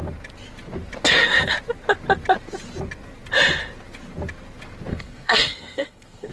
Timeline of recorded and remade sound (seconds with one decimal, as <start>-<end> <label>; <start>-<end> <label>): 0.0-4.9 recorded; 4.9-6.3 remade